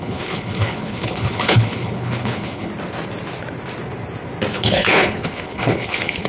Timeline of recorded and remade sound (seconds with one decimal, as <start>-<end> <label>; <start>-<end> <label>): 0.0-2.7 remade; 2.7-4.5 recorded; 4.5-6.3 remade